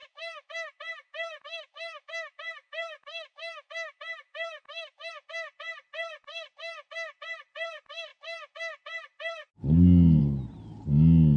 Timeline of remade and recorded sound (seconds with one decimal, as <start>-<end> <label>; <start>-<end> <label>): 0.0-5.1 remade; 5.1-11.4 recorded